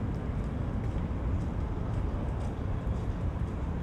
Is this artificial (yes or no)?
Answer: no